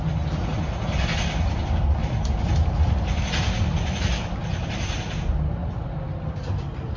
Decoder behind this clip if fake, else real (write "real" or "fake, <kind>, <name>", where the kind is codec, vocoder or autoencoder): real